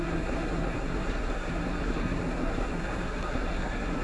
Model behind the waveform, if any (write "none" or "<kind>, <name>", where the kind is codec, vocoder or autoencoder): codec, SNAC